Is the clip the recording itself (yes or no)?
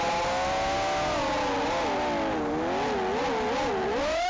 yes